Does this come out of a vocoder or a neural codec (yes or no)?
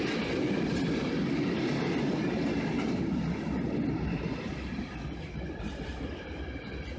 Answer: no